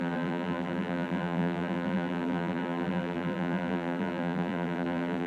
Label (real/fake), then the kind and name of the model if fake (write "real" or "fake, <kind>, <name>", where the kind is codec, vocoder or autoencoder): fake, vocoder, BigVGAN v2